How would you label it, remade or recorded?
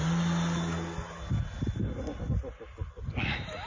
recorded